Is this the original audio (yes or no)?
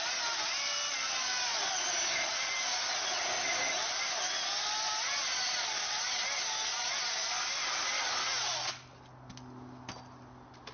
yes